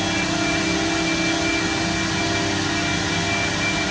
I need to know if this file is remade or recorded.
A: recorded